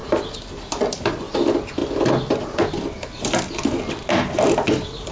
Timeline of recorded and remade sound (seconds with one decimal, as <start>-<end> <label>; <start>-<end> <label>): 0.0-5.1 recorded